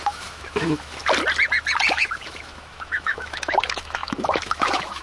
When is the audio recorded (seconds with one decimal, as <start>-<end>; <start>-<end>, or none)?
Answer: 1.0-1.9